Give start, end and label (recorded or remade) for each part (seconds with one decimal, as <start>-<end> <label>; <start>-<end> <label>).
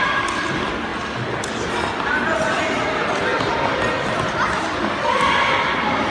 0.0-6.1 recorded